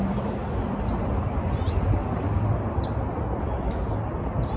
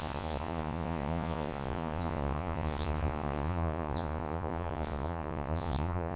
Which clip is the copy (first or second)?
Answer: second